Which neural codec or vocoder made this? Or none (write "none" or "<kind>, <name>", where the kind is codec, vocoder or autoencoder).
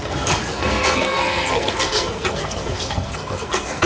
codec, SNAC